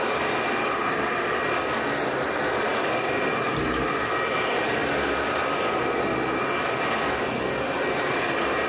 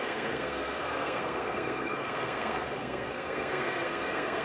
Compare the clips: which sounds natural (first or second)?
first